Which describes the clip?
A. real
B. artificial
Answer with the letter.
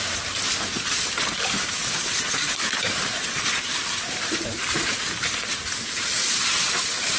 B